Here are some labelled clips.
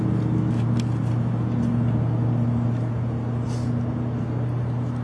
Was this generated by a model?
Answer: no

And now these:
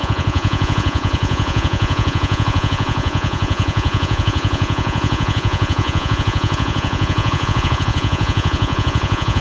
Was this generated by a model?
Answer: yes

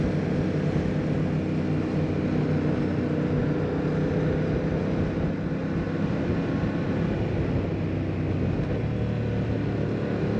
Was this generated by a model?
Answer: no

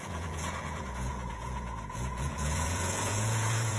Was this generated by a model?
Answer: yes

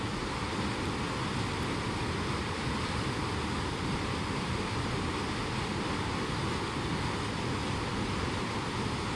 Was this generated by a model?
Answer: no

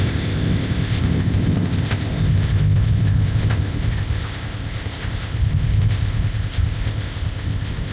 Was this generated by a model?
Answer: yes